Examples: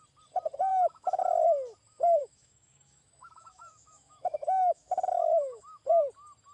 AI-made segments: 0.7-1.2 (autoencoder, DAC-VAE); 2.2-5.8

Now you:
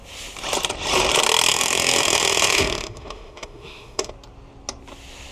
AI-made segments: 1.5-4.1 (autoencoder, DAC-VAE)

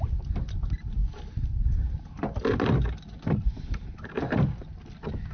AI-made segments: none

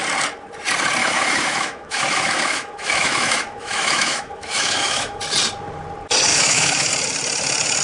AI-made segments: 1.0-5.2 (autoencoder, DAC-VAE); 6.3-6.9

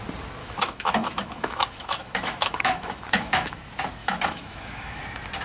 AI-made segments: 0.4-3.6 (autoencoder, DAC-VAE); 4.0-5.0

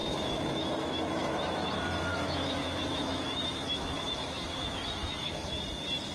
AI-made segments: 0.0-1.7 (autoencoder, DAC-VAE); 2.1-5.6

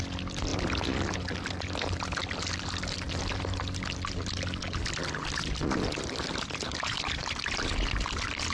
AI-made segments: none

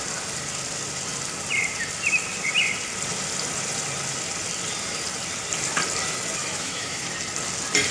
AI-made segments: 6.4-7.0 (autoencoder, DAC-VAE)